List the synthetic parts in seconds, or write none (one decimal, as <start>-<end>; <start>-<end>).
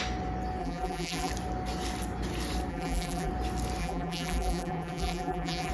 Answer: 0.6-1.3; 2.7-3.3; 3.8-5.7